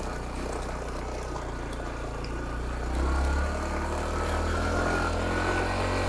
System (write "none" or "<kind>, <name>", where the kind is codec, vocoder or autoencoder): none